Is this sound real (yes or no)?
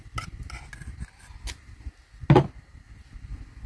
yes